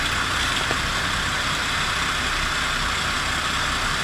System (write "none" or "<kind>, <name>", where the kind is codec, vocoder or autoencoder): none